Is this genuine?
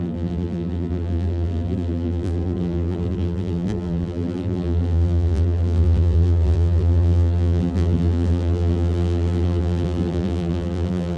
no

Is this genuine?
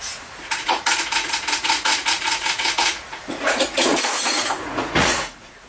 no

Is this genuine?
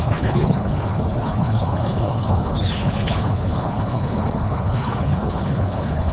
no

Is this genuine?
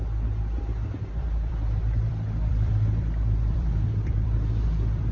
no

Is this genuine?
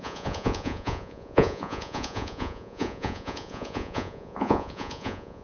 no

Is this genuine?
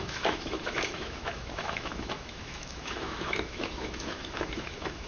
no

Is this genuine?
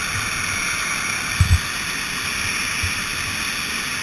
yes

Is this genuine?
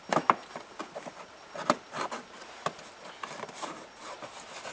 yes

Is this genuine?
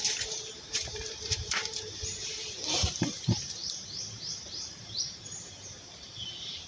no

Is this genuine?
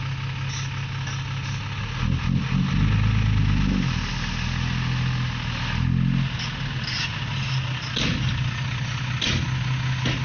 yes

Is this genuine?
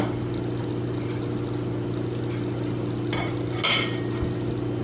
yes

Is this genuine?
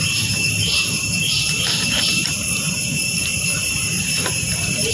no